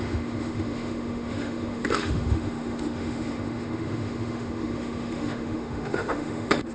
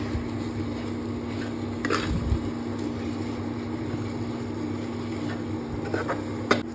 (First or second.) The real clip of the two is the second